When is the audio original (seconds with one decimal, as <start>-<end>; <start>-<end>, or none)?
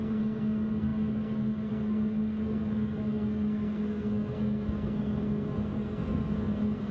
none